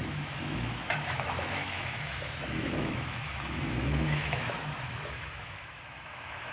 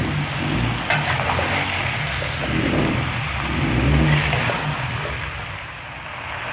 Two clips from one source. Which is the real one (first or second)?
second